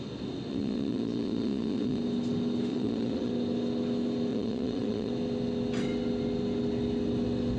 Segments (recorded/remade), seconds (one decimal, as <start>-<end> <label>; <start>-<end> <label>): 0.0-0.5 recorded; 0.5-2.0 remade; 2.0-2.7 recorded; 2.7-3.3 remade; 3.3-4.3 recorded; 4.3-5.1 remade; 5.1-7.6 recorded